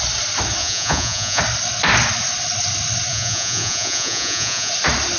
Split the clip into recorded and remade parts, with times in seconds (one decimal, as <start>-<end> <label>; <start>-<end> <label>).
0.0-0.6 recorded; 0.6-1.4 remade; 1.4-3.1 recorded; 3.1-4.7 remade; 4.7-5.2 recorded